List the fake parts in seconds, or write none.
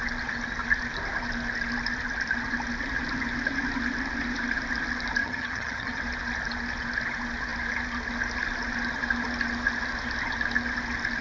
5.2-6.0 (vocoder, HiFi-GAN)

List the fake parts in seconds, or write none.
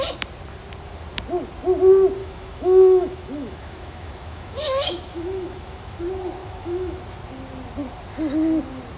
2.2-6.0 (autoencoder, DAC-VAE); 6.4-7.0